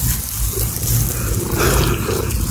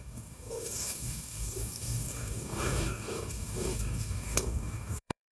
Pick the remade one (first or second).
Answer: second